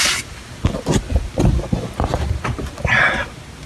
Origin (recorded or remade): recorded